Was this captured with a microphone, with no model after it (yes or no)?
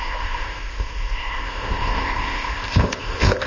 no